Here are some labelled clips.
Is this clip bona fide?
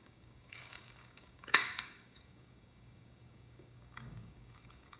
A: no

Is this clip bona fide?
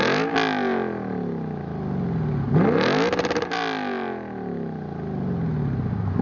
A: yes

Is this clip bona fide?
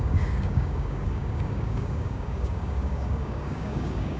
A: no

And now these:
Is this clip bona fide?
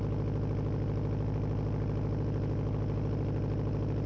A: yes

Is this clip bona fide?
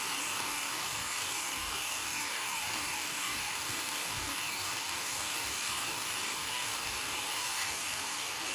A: no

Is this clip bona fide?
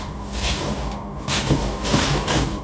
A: no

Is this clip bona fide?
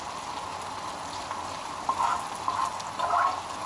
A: yes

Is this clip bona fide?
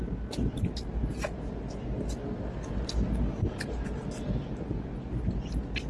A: yes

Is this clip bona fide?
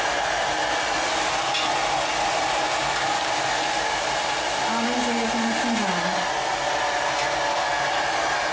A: yes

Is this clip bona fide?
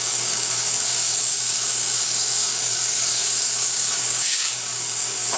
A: no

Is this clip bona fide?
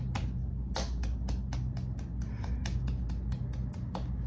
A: yes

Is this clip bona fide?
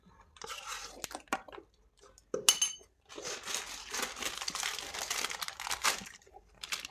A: yes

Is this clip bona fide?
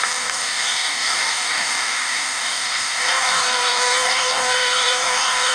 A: no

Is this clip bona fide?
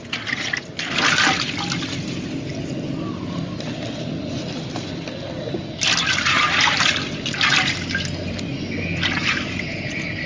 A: yes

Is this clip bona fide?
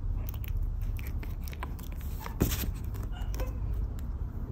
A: yes